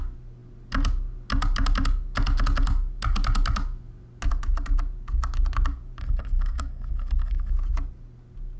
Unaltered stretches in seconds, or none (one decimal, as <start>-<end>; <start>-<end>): 0.0-6.0; 7.5-8.6